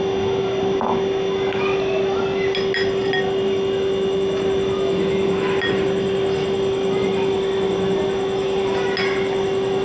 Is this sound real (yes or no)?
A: yes